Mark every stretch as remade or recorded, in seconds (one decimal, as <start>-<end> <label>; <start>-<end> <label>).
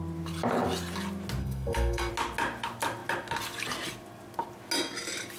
0.0-1.4 recorded; 1.4-2.1 remade; 2.1-5.4 recorded